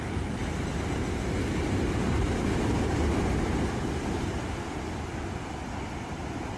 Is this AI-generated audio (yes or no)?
no